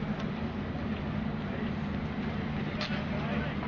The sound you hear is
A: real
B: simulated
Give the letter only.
A